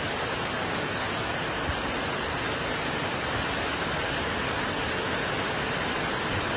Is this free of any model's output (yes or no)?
yes